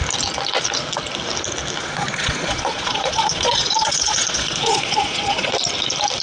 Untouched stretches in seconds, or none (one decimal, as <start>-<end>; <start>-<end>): 0.0-1.8; 5.5-6.2